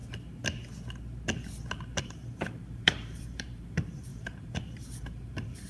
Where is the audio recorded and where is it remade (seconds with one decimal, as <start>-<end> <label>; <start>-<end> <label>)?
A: 0.0-2.0 recorded; 2.0-5.7 remade